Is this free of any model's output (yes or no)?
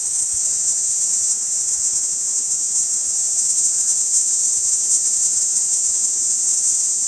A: no